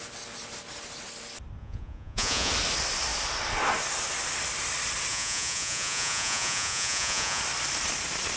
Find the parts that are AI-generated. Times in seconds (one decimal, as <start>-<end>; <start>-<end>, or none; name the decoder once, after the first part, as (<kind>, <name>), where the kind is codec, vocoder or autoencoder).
1.6-2.5 (vocoder, Vocos); 5.1-7.4